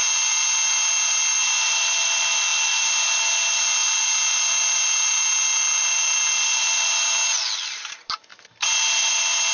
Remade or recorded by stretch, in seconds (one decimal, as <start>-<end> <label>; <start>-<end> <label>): 0.0-9.5 recorded